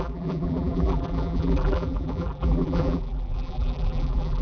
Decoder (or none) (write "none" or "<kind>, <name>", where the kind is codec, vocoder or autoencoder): vocoder, BigVGAN v2